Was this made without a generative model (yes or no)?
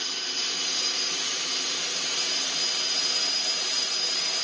no